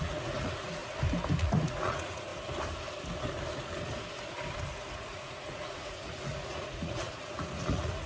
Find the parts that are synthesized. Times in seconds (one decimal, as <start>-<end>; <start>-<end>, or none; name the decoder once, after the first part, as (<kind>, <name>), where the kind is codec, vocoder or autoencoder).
0.0-0.8 (vocoder, Vocos); 1.4-2.3; 4.9-8.1